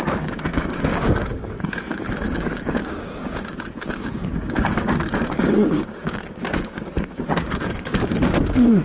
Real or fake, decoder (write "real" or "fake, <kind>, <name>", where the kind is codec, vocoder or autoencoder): fake, codec, DAC